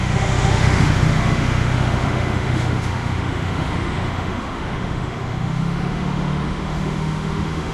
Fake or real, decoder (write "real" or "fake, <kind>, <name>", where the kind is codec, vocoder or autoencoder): fake, autoencoder, DAC-VAE